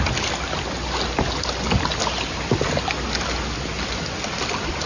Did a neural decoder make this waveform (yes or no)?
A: no